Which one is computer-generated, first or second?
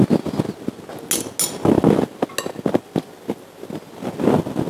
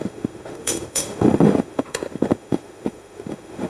second